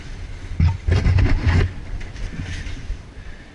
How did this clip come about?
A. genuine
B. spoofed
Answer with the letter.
A